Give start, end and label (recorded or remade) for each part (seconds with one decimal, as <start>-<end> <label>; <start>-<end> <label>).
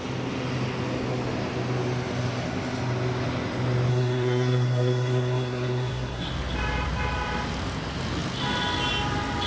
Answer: 0.0-3.9 recorded; 3.9-6.3 remade; 6.3-9.5 recorded